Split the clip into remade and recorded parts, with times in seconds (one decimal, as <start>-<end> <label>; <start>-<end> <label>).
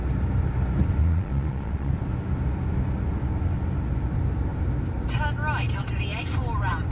0.0-1.0 recorded; 1.0-1.9 remade; 1.9-6.9 recorded